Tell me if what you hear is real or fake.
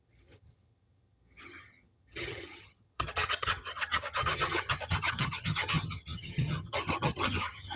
fake